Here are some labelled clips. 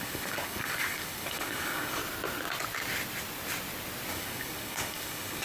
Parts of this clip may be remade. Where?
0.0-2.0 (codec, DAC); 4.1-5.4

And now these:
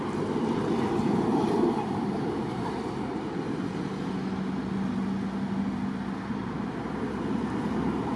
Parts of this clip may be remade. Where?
1.3-4.4 (vocoder, BigVGAN v2)

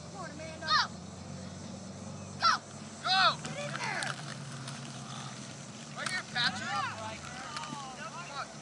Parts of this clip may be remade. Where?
0.0-1.0 (vocoder, BigVGAN v2); 3.8-4.3; 5.5-8.6

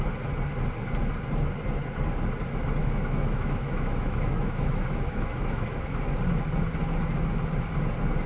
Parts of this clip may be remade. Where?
2.8-6.0 (autoencoder, DAC-VAE)

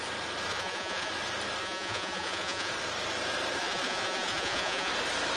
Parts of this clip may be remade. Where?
0.5-1.1 (vocoder, Vocos); 1.6-2.7; 3.6-4.9